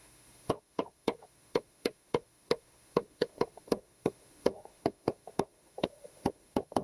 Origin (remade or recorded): remade